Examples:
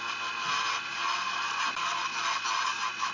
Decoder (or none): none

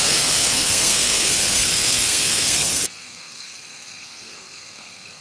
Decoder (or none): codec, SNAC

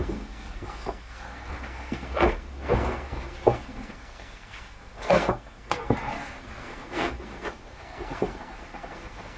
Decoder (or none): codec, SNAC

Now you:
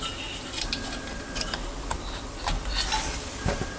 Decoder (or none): none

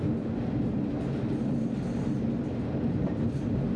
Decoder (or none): none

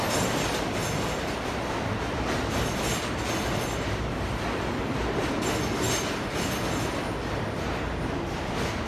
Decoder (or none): none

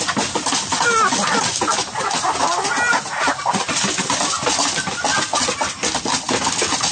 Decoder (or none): none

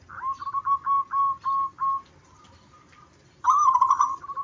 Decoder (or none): none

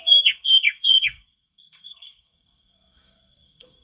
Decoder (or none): codec, SNAC